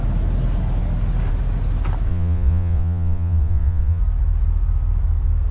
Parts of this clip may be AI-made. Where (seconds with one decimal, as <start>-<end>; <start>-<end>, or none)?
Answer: 2.1-4.0